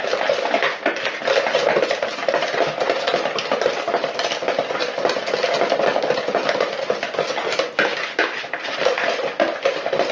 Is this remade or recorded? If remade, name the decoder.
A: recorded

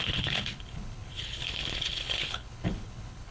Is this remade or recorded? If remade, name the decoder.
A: remade, codec, HILCodec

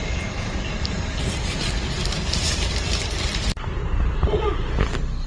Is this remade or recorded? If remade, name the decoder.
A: recorded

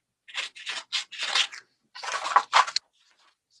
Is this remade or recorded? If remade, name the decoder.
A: recorded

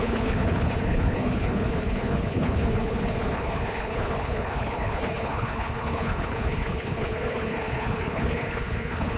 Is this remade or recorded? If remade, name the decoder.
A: remade, codec, HILCodec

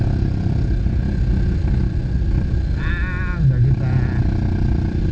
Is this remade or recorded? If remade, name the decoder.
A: recorded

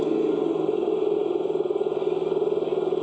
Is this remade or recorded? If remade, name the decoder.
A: recorded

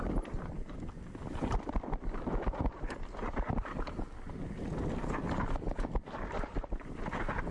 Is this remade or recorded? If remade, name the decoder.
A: recorded